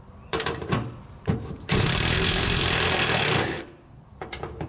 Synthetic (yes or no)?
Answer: yes